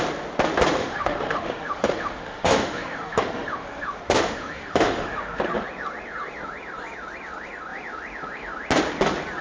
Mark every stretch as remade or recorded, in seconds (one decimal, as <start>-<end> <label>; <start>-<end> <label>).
0.0-0.8 recorded; 0.8-5.4 remade; 5.4-9.4 recorded